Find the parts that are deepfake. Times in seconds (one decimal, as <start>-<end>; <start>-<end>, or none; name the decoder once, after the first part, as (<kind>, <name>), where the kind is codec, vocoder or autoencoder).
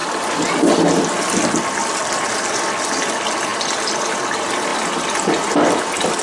none